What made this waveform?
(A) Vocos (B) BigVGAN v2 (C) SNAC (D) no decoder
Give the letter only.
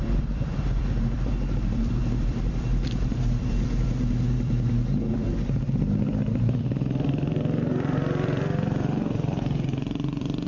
B